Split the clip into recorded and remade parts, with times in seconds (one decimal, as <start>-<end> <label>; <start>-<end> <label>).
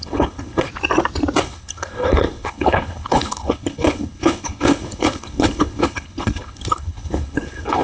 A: 0.0-0.7 remade; 0.7-1.4 recorded; 1.4-7.8 remade